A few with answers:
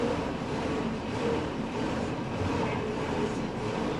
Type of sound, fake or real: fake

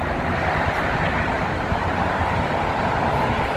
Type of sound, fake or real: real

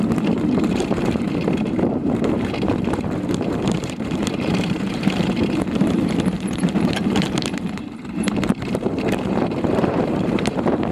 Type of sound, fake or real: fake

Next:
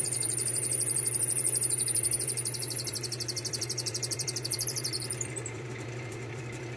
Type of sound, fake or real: fake